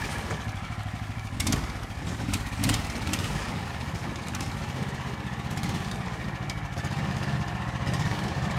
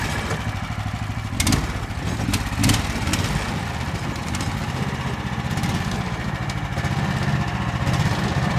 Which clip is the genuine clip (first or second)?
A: second